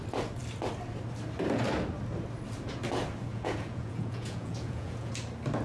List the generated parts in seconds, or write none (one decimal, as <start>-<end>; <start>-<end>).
3.3-5.1

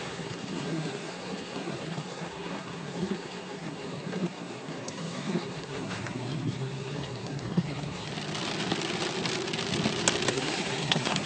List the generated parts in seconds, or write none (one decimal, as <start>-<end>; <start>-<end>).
0.0-8.1; 10.3-11.3

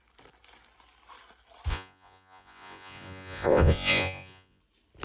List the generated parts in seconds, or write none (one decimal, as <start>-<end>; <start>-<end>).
1.7-4.6

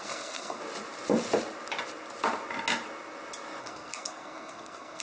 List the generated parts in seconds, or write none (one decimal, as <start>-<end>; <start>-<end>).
0.0-0.6; 3.6-5.0

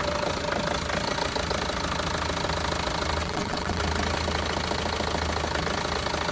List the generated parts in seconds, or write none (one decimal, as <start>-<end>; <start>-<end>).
3.2-3.8

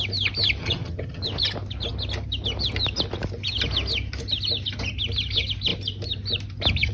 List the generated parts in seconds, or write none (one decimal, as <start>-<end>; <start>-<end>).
0.6-1.2